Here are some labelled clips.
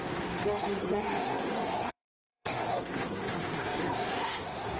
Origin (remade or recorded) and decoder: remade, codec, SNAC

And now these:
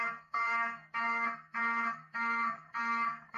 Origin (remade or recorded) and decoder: remade, codec, SNAC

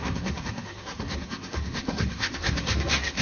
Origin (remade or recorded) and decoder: remade, codec, SNAC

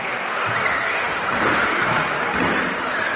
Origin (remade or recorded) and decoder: recorded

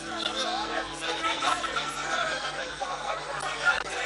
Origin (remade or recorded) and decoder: remade, codec, SNAC